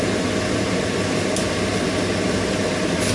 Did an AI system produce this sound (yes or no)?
no